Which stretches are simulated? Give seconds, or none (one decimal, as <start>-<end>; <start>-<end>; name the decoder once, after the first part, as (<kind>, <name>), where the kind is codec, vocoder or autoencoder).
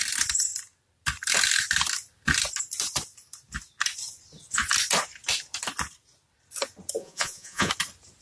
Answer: 7.0-7.7 (vocoder, Vocos)